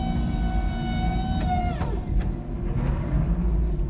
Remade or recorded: recorded